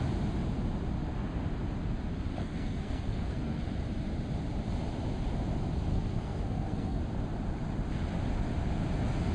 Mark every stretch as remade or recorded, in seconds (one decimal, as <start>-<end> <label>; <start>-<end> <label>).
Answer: 0.0-2.4 recorded; 2.4-3.6 remade; 3.6-5.9 recorded; 5.9-7.0 remade; 7.0-9.3 recorded